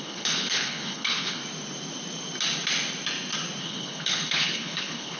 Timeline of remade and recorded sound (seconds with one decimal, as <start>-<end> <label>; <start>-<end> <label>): 0.0-1.4 remade; 1.4-3.6 recorded; 3.6-5.2 remade